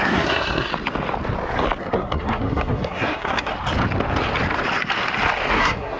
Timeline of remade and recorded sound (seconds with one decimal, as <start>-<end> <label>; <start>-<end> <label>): 0.0-0.7 remade; 0.7-1.8 recorded; 1.8-3.5 remade; 3.5-5.5 recorded; 5.5-6.0 remade